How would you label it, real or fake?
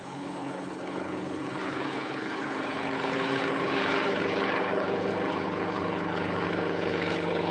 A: fake